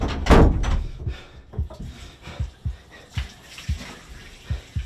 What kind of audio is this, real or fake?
real